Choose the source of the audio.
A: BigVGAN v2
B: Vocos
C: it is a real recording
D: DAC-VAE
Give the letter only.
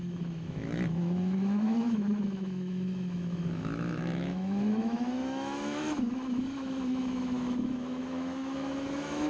D